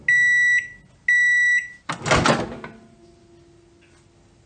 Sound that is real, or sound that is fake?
real